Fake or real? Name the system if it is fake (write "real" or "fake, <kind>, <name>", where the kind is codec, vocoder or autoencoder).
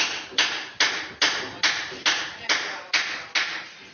real